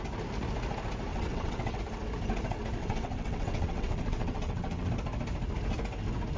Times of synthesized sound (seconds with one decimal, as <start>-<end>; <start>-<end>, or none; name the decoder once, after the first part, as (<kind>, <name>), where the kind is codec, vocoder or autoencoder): 1.1-1.8 (vocoder, WaveNeXt); 2.8-4.9